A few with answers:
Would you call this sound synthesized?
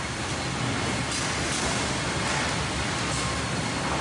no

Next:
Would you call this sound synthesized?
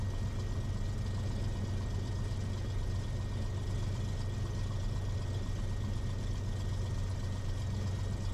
no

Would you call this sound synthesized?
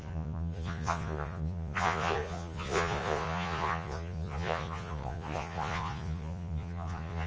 yes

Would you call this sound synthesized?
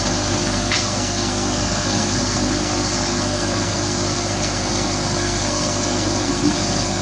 yes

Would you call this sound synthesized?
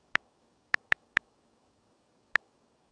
yes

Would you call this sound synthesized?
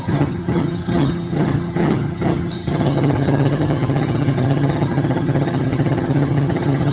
yes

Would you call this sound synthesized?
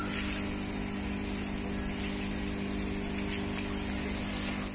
no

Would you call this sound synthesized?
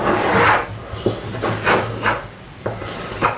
no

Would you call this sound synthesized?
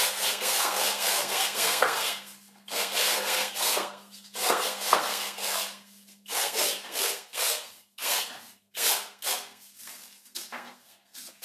yes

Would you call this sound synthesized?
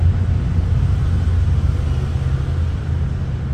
no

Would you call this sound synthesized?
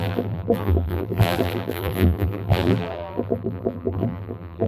yes